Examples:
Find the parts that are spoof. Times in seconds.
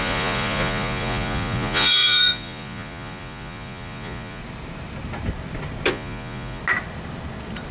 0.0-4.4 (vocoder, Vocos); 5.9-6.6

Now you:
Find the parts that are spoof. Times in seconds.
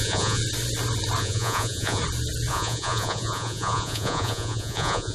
0.0-0.4 (vocoder, Vocos); 1.2-2.0; 2.5-5.1